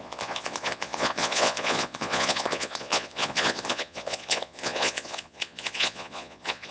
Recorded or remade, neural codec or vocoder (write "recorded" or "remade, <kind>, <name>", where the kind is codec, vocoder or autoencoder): remade, vocoder, Vocos